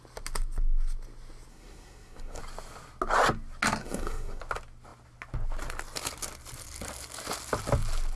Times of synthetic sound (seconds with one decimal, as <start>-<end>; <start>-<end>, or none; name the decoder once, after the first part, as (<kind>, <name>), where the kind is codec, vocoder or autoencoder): 1.5-2.4 (codec, SNAC); 3.8-4.4